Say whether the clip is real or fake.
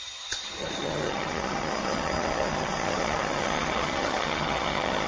fake